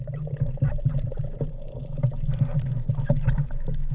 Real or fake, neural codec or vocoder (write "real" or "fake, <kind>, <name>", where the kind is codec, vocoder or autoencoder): real